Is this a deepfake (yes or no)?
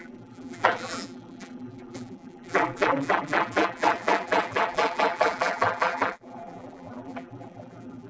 yes